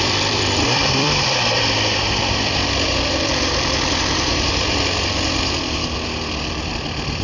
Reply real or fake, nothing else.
fake